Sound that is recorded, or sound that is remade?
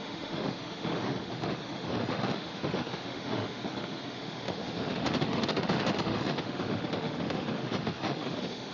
remade